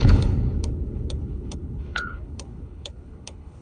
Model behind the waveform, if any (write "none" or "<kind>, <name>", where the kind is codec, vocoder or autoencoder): codec, HILCodec